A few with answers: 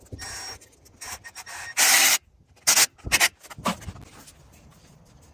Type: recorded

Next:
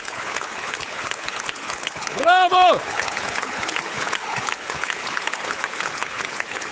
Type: remade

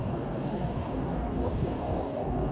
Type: remade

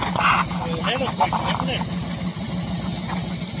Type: recorded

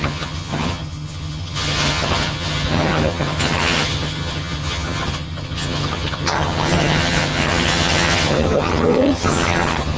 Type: remade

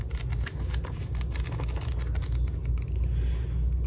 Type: recorded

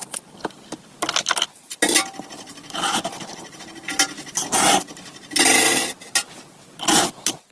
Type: recorded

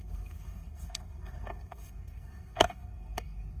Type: remade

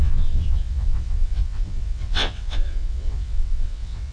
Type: remade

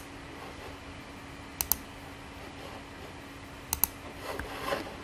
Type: recorded